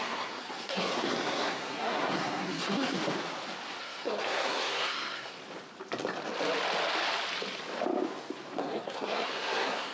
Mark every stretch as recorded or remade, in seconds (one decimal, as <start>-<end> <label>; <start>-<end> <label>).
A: 0.0-3.0 remade; 3.0-3.8 recorded; 3.8-5.4 remade; 5.4-8.6 recorded; 8.6-9.9 remade